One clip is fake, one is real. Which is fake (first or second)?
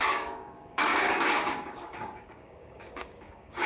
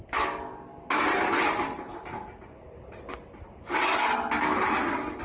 first